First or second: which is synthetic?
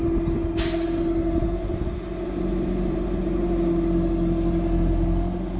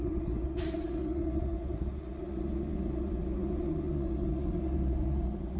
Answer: second